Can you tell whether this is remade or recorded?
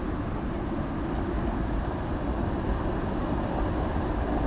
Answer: recorded